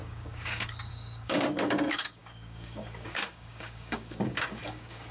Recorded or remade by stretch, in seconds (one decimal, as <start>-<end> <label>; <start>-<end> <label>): 0.0-5.1 remade